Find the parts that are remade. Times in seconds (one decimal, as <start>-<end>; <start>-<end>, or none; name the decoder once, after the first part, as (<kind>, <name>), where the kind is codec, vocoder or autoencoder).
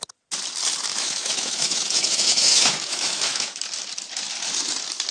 0.9-3.6 (autoencoder, DAC-VAE)